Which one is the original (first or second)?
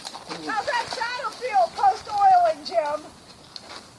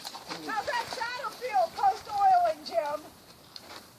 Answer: first